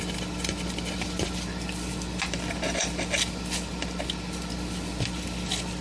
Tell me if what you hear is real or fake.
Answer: real